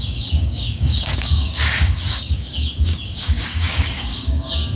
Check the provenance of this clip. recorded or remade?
remade